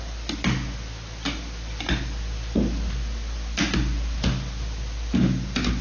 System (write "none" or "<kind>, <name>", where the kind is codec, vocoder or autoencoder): none